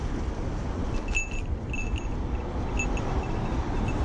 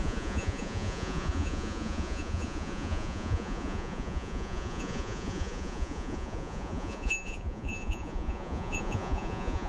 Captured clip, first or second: first